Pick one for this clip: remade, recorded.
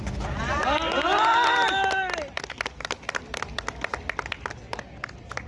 recorded